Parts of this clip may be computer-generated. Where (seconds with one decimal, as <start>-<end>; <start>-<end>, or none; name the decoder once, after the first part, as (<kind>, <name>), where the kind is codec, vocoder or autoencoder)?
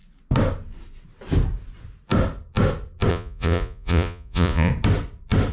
3.1-4.7 (vocoder, Vocos)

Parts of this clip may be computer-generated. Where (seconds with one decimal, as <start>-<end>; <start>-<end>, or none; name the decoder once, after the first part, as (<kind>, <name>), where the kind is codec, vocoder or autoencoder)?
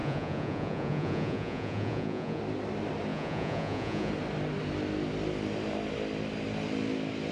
0.0-2.4 (vocoder, Vocos); 3.1-4.1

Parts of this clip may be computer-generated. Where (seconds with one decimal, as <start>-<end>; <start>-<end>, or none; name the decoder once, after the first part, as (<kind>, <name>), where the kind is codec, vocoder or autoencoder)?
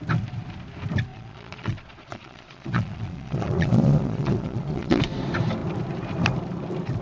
1.1-5.0 (vocoder, Vocos)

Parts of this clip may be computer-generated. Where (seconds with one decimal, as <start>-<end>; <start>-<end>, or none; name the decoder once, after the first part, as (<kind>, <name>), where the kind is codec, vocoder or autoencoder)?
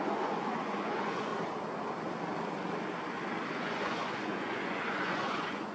0.0-1.3 (vocoder, Vocos); 3.5-5.7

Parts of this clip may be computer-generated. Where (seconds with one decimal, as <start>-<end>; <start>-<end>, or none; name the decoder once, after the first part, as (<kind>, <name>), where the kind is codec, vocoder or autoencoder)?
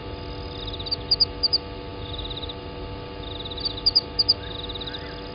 none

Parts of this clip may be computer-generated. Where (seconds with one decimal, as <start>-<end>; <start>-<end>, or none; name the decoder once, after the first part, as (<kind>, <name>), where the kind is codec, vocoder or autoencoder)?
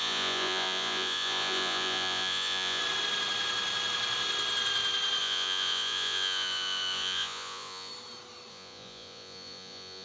0.0-2.8 (vocoder, Vocos); 5.2-7.9; 8.5-10.0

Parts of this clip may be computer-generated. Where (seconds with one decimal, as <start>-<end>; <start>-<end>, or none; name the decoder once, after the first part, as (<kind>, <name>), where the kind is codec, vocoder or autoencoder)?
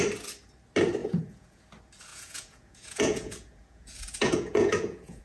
1.0-1.6 (vocoder, Vocos); 2.1-5.2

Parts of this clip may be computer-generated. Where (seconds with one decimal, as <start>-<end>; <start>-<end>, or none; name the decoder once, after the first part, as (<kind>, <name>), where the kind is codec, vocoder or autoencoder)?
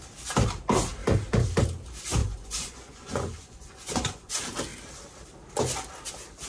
2.2-4.3 (vocoder, Vocos)